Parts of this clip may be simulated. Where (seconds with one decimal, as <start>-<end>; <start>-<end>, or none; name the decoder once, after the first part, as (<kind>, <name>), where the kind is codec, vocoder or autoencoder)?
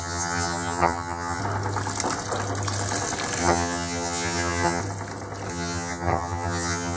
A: 0.0-1.4 (vocoder, HiFi-GAN); 3.4-4.8; 5.5-7.0